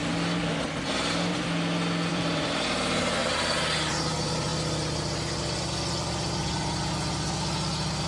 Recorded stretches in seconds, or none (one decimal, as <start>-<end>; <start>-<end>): 0.0-2.1; 3.2-3.9; 4.5-8.1